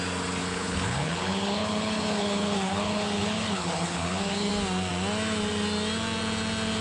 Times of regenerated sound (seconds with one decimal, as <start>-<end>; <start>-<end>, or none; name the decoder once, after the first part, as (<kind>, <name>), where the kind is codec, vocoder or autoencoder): 0.4-4.5 (codec, HILCodec)

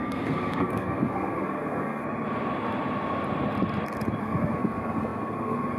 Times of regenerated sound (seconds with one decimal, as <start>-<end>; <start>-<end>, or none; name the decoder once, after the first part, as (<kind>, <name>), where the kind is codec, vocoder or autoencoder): 0.0-2.0 (codec, SNAC); 4.2-5.8